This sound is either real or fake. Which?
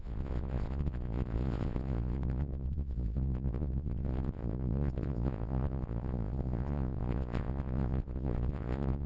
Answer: fake